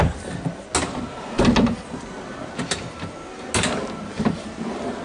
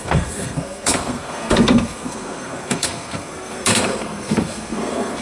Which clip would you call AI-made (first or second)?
second